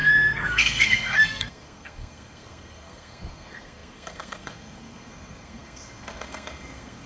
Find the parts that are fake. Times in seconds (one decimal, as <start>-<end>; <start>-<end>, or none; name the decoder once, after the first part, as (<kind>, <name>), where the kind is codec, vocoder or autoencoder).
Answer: 0.0-7.1 (codec, SNAC)